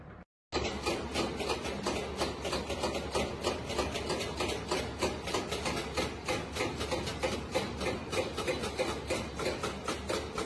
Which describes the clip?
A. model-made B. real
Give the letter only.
B